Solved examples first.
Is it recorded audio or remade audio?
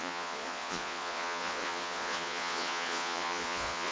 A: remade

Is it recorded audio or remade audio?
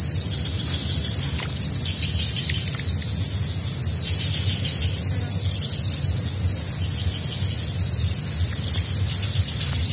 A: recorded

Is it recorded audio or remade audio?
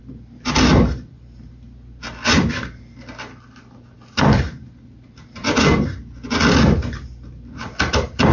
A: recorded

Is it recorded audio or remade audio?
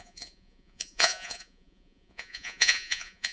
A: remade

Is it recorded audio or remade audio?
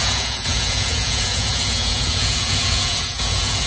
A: remade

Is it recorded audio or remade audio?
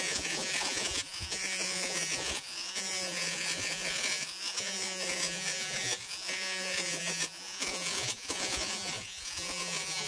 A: remade